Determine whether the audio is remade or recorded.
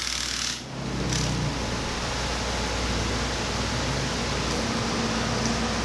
recorded